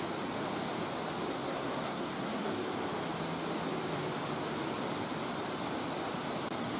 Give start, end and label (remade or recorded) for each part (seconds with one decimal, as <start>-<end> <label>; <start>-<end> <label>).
0.0-1.3 recorded; 1.3-2.5 remade; 2.5-6.8 recorded